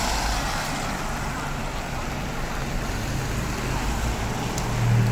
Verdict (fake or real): real